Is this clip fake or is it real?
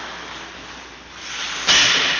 real